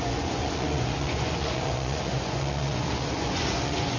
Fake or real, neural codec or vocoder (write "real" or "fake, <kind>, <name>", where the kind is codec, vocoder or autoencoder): fake, vocoder, Vocos